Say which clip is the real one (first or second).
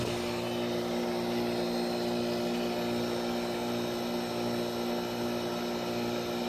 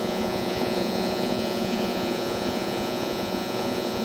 first